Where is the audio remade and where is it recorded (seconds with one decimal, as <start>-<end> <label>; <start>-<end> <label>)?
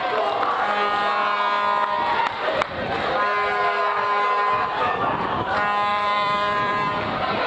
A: 0.0-5.9 recorded; 5.9-7.5 remade